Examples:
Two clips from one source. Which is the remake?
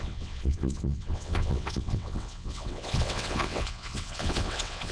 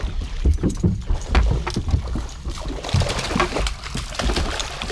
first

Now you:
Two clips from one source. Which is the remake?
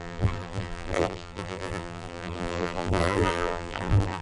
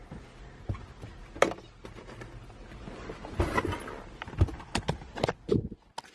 first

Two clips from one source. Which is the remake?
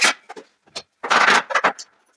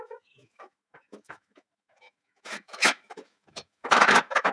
second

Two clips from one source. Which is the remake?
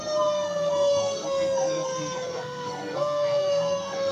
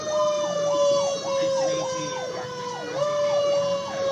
first